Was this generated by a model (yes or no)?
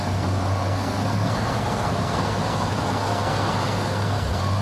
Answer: yes